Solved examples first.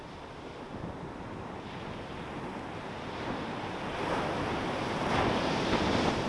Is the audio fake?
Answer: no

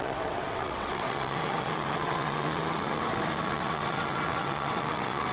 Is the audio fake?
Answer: yes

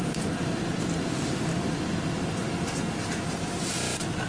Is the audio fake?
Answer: no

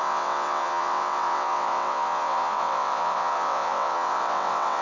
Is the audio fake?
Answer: yes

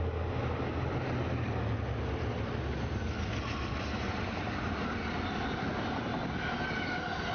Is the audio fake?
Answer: no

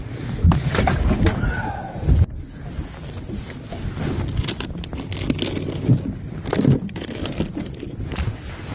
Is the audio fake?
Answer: no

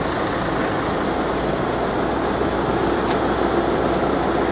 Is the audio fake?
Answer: no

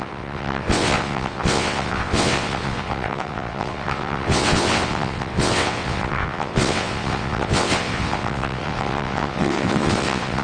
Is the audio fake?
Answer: yes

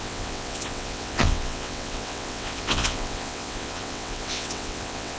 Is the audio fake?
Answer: yes